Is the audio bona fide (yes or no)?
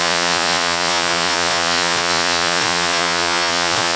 no